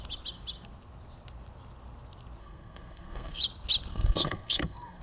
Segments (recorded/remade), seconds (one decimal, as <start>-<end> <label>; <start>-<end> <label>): 0.0-2.4 recorded; 2.4-3.4 remade; 3.4-3.9 recorded; 3.9-5.0 remade